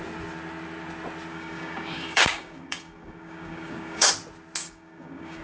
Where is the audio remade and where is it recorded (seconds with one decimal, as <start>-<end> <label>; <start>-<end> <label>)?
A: 0.0-1.3 recorded; 1.3-4.1 remade; 4.1-4.6 recorded; 4.6-5.4 remade

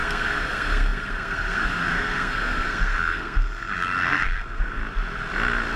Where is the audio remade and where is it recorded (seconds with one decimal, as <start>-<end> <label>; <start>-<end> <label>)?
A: 0.0-4.8 remade; 4.8-5.8 recorded

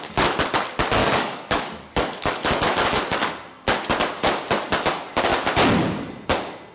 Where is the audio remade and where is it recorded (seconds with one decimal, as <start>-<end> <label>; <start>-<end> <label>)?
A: 0.0-1.0 recorded; 1.0-3.3 remade; 3.3-6.7 recorded

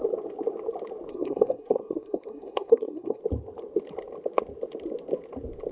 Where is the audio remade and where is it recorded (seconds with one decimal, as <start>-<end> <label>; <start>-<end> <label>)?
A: 0.0-1.1 recorded; 1.1-3.2 remade; 3.2-5.7 recorded

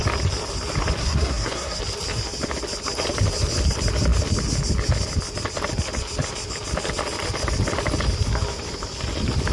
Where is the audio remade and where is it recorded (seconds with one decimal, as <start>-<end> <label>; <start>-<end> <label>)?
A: 0.0-1.0 recorded; 1.0-1.8 remade; 1.8-9.5 recorded

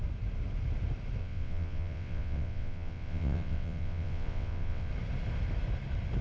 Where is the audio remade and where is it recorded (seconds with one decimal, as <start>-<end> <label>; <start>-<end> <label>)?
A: 0.0-1.2 recorded; 1.2-4.9 remade; 4.9-6.2 recorded